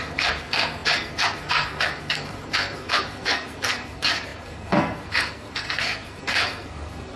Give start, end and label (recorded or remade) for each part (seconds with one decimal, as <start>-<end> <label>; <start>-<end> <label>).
0.0-7.2 remade